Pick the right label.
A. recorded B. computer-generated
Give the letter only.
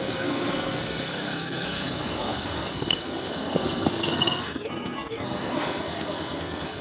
B